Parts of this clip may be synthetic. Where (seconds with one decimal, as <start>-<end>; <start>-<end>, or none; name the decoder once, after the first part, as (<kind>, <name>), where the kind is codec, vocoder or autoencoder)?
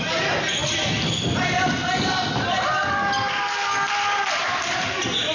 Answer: none